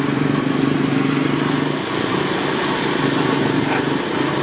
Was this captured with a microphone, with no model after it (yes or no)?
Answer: yes